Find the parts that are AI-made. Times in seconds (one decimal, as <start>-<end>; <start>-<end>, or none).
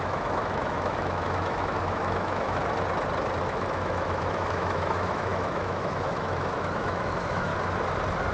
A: 0.0-2.6; 3.4-7.5